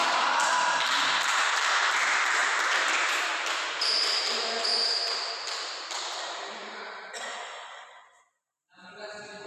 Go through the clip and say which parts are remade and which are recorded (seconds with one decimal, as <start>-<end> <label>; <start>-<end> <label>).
0.0-1.5 recorded; 1.5-4.7 remade; 4.7-8.4 recorded; 8.4-9.5 remade